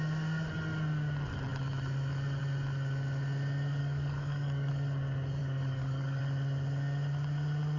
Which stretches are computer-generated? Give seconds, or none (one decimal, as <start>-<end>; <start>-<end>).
3.8-4.7; 5.4-6.2